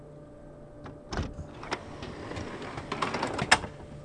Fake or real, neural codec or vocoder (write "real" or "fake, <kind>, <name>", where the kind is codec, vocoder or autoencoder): real